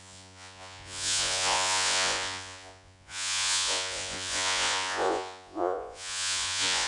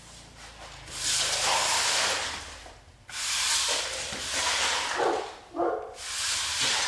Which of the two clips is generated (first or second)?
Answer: first